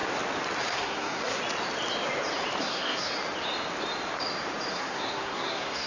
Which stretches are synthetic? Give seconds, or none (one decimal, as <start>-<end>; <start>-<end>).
0.7-1.4; 2.6-3.1; 4.7-5.9